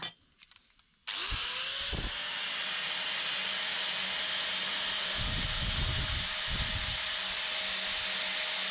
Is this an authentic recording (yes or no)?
yes